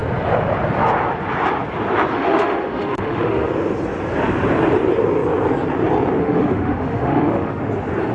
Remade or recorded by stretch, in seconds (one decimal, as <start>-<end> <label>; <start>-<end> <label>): 0.0-2.1 recorded; 2.1-3.5 remade; 3.5-6.2 recorded; 6.2-7.6 remade; 7.6-8.1 recorded